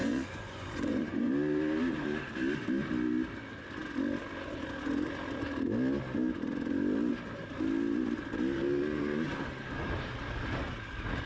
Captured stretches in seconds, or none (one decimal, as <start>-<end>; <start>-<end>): 1.3-11.3